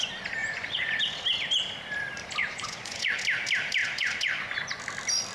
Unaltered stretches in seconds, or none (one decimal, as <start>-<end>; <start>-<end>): 0.0-0.4; 1.0-2.4; 3.2-3.8; 4.8-5.3